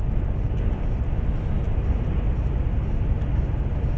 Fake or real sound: real